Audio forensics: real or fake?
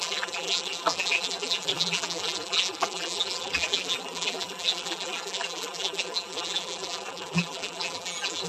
fake